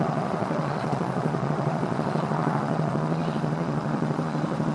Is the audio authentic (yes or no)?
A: no